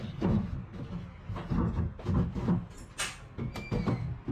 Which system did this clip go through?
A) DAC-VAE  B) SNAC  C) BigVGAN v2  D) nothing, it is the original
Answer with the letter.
D